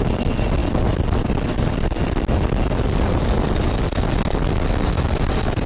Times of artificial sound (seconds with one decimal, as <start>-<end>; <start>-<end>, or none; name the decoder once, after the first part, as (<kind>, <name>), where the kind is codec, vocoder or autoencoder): none